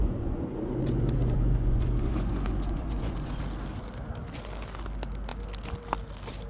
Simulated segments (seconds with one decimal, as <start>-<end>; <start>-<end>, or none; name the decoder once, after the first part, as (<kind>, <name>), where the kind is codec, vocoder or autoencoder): 0.0-3.4 (vocoder, Vocos)